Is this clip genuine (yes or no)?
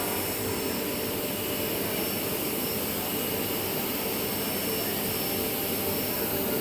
yes